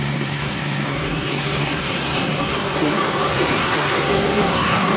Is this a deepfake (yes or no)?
yes